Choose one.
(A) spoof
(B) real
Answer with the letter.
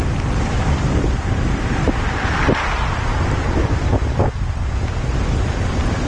A